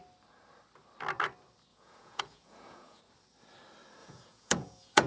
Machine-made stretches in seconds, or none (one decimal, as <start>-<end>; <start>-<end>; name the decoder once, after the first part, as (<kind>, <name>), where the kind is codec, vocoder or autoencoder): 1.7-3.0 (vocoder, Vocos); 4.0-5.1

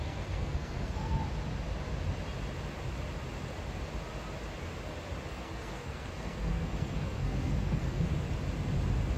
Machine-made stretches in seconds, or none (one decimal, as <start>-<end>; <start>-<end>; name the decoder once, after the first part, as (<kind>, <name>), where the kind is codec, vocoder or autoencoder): 0.0-1.2 (codec, SNAC); 5.3-8.1

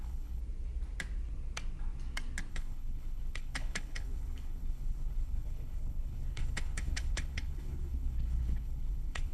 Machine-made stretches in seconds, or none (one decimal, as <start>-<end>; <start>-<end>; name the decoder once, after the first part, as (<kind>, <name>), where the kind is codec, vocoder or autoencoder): 0.0-0.4 (codec, HILCodec); 2.5-9.3

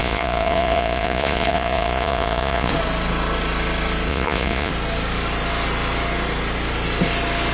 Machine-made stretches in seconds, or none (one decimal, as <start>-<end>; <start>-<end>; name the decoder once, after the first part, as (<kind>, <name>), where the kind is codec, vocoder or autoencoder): 0.0-2.7 (vocoder, Vocos); 4.1-4.7

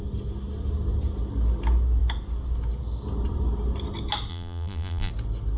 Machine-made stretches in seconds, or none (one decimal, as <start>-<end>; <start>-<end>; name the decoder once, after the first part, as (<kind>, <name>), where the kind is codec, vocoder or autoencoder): 4.3-5.1 (vocoder, BigVGAN v2)

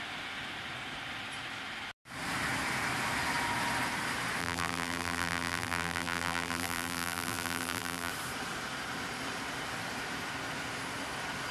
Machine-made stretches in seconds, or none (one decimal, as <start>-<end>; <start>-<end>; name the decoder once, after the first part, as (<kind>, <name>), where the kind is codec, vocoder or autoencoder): 4.4-8.1 (vocoder, BigVGAN v2)

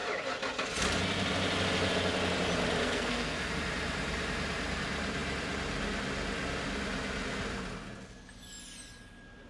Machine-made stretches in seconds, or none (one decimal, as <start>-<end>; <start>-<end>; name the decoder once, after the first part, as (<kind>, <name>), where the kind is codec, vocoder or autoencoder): 2.8-3.5 (codec, SNAC)